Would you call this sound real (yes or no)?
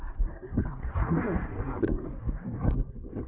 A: no